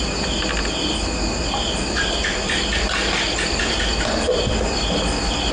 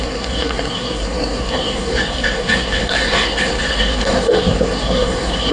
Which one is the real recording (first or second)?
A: first